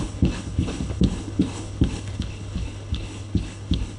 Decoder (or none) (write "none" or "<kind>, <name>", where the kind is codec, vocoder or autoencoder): codec, HILCodec